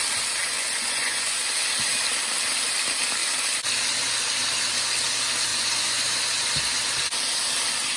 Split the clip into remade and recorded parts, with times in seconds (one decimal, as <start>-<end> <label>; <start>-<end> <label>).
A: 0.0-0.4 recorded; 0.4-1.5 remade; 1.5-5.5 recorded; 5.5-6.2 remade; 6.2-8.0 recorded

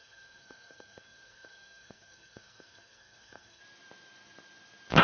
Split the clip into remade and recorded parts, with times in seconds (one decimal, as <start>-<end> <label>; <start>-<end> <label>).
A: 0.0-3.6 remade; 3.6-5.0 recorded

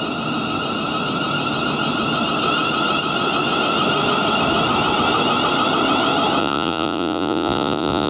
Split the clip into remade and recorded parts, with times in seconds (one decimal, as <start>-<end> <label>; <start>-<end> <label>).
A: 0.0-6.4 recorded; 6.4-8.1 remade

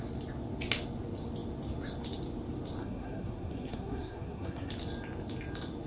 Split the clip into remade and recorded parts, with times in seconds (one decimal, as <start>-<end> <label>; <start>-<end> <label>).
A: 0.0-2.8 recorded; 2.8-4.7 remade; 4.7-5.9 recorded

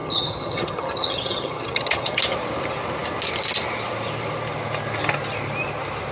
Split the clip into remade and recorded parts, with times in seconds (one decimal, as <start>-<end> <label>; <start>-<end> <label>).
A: 0.0-2.2 remade; 2.2-6.1 recorded